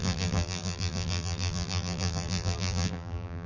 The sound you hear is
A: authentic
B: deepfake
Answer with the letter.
B